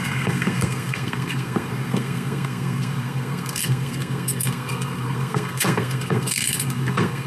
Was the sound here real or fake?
fake